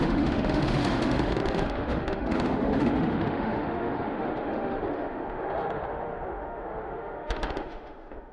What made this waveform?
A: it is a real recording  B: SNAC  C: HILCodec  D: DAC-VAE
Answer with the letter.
D